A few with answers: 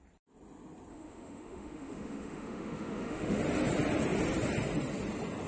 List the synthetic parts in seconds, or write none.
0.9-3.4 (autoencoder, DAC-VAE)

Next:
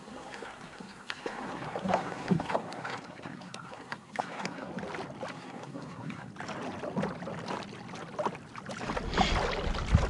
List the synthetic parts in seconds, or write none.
0.0-4.7 (codec, SNAC); 5.3-6.3

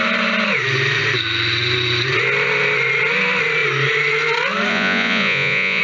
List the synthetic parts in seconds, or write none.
4.7-5.8 (vocoder, Vocos)

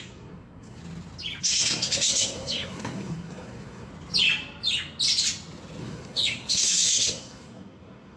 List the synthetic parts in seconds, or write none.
0.0-0.8 (codec, SNAC); 1.4-3.9; 5.8-8.2

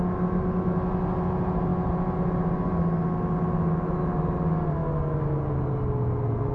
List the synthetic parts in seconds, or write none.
none

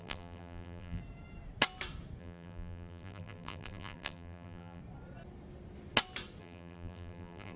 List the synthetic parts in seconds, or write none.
0.0-1.0 (vocoder, BigVGAN v2); 2.2-4.8; 6.4-7.6

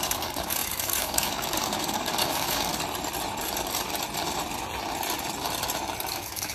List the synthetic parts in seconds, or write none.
0.0-2.7 (codec, DAC); 6.1-6.5

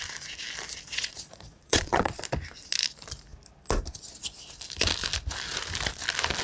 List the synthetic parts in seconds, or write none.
0.9-2.2 (vocoder, Vocos)